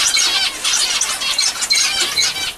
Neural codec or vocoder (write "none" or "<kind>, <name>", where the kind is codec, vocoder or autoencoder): none